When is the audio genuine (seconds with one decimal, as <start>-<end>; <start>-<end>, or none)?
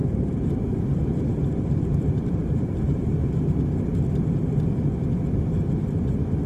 1.0-2.4; 3.7-6.5